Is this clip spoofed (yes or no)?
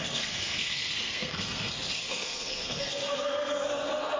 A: yes